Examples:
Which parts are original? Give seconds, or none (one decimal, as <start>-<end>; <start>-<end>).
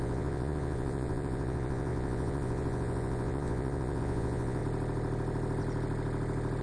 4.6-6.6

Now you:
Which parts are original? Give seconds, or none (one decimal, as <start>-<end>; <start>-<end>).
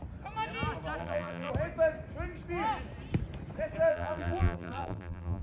0.0-1.0; 1.5-3.9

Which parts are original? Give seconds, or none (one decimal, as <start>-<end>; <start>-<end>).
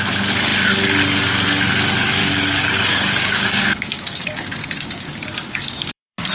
0.0-2.2